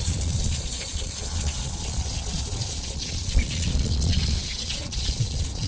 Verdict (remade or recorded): remade